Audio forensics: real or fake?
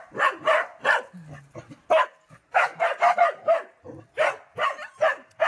real